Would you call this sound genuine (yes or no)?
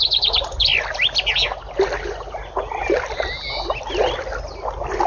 yes